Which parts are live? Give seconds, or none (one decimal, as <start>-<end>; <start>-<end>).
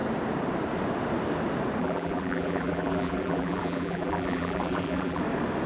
0.0-1.8; 5.2-5.7